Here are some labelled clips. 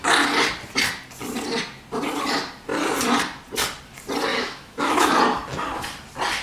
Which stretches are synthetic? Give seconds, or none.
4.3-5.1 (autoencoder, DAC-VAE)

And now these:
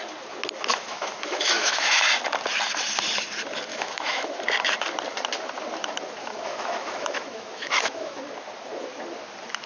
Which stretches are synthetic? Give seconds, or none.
0.7-2.0 (autoencoder, DAC-VAE); 3.7-4.4; 6.2-8.2

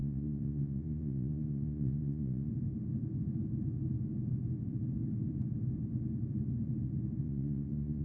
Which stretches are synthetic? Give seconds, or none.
0.0-2.5 (vocoder, Vocos); 7.2-8.0

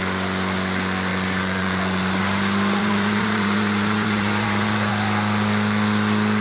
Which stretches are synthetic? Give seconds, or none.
1.1-2.2 (vocoder, Vocos); 2.8-4.9

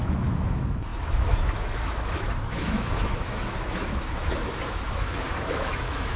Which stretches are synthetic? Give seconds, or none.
0.0-6.2 (autoencoder, DAC-VAE)

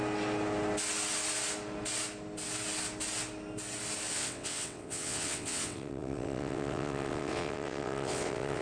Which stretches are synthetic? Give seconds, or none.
4.1-8.6 (vocoder, WaveNeXt)